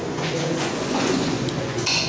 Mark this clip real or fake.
fake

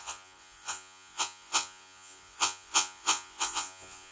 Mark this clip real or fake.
fake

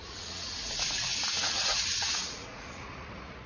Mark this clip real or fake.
fake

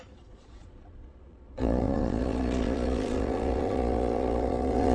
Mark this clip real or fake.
fake